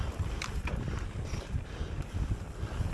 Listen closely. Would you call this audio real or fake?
real